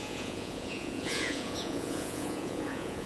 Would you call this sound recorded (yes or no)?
no